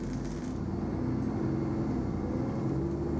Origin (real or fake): real